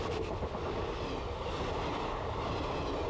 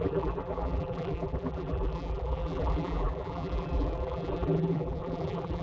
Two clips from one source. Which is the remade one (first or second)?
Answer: second